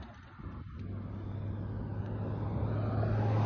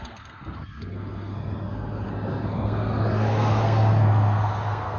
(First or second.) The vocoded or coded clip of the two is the second